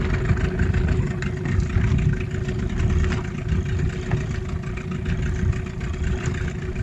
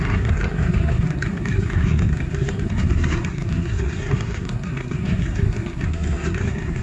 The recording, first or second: first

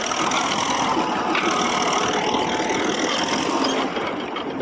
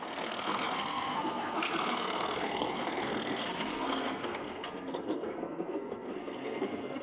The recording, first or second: first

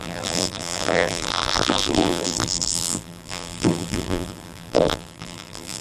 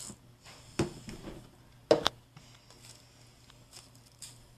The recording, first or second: second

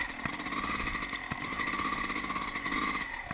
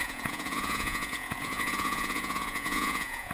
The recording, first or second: first